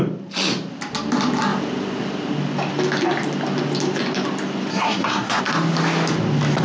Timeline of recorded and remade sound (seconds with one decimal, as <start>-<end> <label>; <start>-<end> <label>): 0.0-4.7 recorded; 4.7-5.4 remade; 5.4-6.6 recorded